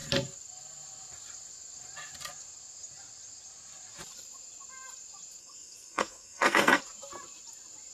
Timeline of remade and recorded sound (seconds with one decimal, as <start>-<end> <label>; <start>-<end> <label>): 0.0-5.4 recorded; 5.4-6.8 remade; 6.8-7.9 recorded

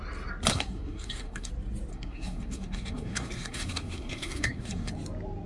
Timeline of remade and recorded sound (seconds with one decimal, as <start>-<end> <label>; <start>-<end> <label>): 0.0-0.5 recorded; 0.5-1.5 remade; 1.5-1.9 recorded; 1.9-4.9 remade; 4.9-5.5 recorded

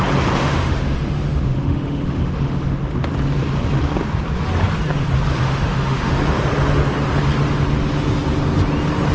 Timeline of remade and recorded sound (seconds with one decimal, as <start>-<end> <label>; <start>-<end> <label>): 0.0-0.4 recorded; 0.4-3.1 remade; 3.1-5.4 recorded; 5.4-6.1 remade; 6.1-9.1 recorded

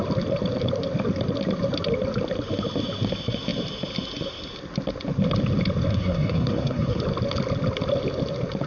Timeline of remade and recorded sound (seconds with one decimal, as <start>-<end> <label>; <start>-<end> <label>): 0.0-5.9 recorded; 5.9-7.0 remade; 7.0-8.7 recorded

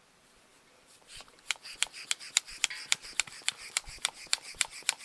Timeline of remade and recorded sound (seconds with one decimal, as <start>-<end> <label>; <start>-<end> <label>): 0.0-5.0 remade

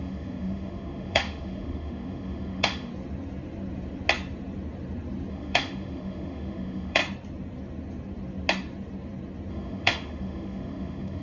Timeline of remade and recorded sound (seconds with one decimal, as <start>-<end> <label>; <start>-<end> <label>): 0.0-2.9 remade; 2.9-5.3 recorded; 5.3-7.0 remade; 7.0-9.5 recorded; 9.5-11.2 remade

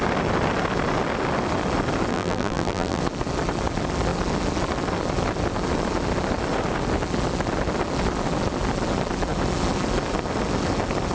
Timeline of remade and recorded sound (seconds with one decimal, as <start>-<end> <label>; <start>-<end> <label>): 0.0-2.1 recorded; 2.1-3.0 remade; 3.0-11.1 recorded

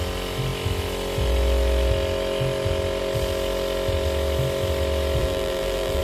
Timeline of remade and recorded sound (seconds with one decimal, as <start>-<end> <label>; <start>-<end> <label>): 0.0-5.2 recorded; 5.2-6.0 remade